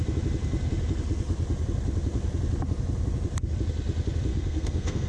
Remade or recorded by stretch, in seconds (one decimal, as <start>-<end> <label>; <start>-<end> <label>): 0.0-4.3 recorded; 4.3-5.1 remade